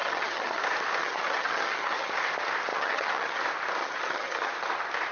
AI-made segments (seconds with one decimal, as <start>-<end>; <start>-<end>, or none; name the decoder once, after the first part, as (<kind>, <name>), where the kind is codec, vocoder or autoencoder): 0.0-0.6 (vocoder, HiFi-GAN); 1.0-2.1; 2.7-3.4; 3.8-4.5